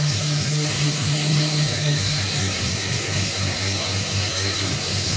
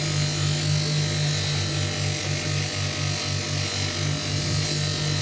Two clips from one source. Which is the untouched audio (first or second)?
second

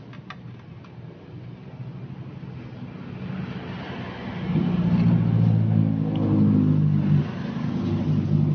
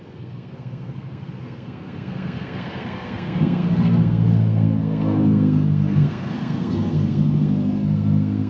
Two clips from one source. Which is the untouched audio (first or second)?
first